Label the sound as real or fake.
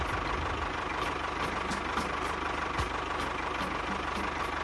real